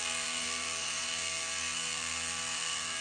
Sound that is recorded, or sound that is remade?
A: remade